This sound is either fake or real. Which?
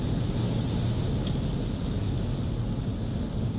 real